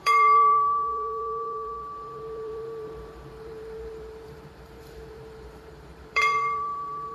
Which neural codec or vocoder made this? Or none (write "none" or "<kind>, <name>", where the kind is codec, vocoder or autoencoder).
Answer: vocoder, BigVGAN v2